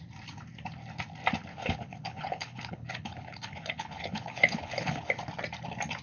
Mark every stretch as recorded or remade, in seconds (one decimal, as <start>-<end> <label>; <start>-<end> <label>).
0.0-1.5 recorded; 1.5-5.1 remade; 5.1-6.0 recorded